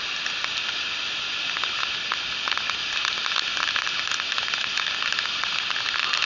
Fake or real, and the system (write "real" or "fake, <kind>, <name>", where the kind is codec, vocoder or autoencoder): real